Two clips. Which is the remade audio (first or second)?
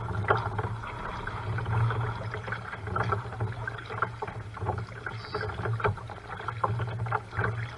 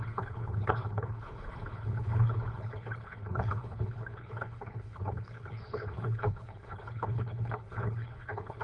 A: second